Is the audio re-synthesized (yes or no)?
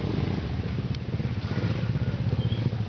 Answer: no